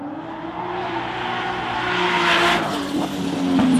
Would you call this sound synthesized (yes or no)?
no